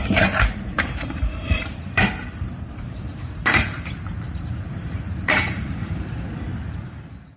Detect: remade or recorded remade